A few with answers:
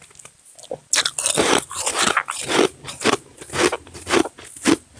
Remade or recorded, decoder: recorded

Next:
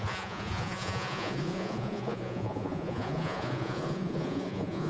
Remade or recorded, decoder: remade, vocoder, Vocos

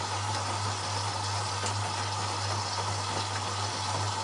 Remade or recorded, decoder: recorded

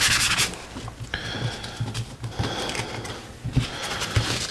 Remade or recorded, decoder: recorded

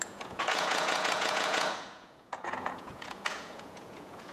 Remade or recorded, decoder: remade, vocoder, Vocos